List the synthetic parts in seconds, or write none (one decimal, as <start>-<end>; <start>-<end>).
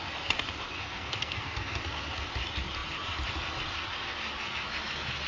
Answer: 0.8-1.8